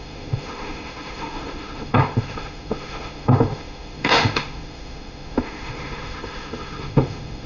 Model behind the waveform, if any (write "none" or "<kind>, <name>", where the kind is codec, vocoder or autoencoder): autoencoder, DAC-VAE